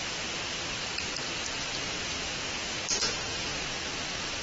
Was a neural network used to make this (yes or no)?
no